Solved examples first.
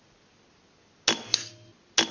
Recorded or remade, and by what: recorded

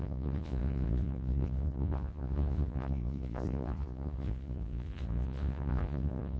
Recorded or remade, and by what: remade, vocoder, Vocos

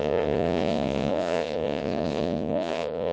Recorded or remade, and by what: remade, vocoder, Vocos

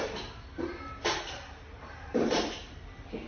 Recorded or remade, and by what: recorded